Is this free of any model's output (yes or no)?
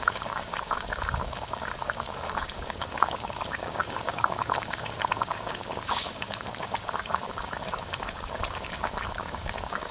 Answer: no